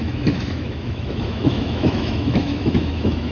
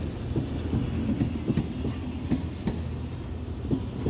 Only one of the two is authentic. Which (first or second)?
second